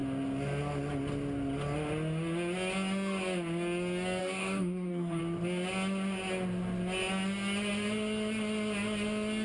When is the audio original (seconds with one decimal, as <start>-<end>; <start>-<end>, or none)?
0.0-4.2; 5.2-9.4